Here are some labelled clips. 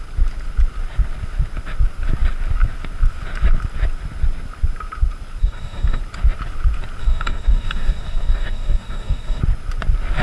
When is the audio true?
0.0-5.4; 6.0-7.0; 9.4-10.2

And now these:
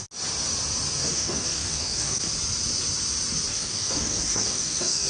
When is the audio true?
0.0-1.0; 2.2-3.5

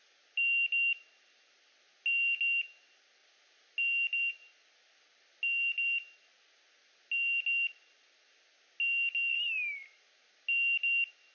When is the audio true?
0.0-11.3